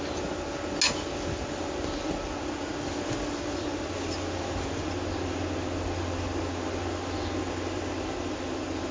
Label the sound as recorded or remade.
recorded